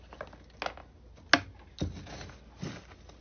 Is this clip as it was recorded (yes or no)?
yes